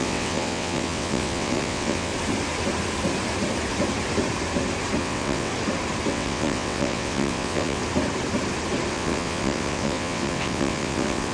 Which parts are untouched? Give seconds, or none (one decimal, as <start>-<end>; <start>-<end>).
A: 2.1-5.0; 5.5-6.1; 7.8-8.9